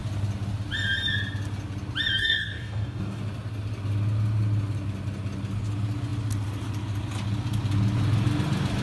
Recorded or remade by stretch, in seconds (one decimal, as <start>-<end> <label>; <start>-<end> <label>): 0.0-2.2 recorded; 2.2-3.2 remade; 3.2-8.8 recorded